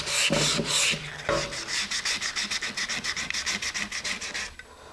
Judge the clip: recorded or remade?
recorded